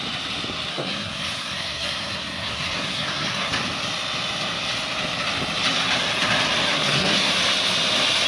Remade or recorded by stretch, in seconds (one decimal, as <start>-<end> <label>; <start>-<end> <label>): 0.0-0.7 recorded; 0.7-3.5 remade; 3.5-6.7 recorded; 6.7-7.3 remade; 7.3-8.3 recorded